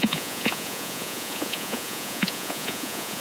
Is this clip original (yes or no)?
no